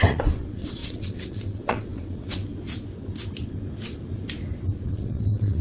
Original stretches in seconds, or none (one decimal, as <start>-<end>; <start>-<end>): 2.4-4.9